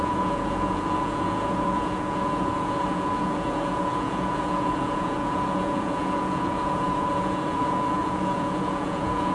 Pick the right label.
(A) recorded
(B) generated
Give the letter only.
B